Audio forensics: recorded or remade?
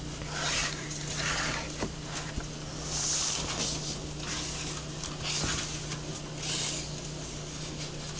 recorded